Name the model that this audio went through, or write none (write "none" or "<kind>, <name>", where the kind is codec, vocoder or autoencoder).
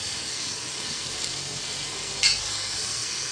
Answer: codec, SNAC